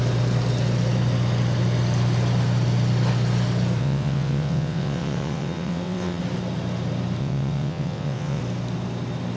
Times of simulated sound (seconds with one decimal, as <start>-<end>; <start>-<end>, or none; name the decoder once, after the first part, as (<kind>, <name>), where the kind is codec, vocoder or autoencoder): 3.8-6.2 (vocoder, WaveNeXt); 7.2-8.4